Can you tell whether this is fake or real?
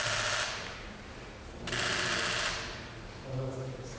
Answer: real